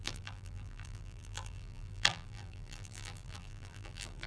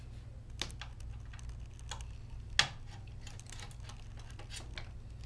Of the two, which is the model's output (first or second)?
first